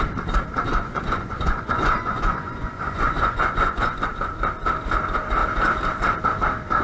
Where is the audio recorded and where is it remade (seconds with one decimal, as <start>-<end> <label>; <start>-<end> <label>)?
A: 0.0-0.7 recorded; 0.7-4.1 remade; 4.1-6.8 recorded